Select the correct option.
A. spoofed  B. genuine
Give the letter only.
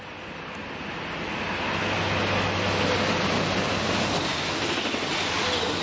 B